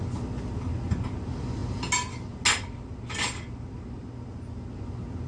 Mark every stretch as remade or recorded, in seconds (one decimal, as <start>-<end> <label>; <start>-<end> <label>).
0.0-5.3 recorded